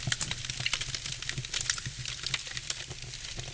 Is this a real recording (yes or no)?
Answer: yes